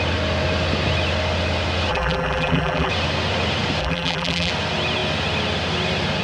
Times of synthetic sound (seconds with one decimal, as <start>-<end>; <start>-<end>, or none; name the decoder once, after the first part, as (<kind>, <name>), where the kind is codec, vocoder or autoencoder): 1.9-2.9 (vocoder, BigVGAN v2); 3.8-4.5